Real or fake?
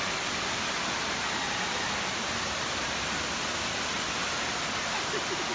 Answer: real